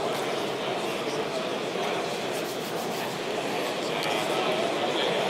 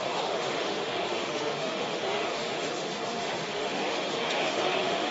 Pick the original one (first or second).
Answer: first